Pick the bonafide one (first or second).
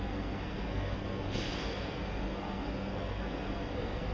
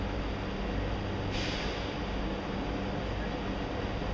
second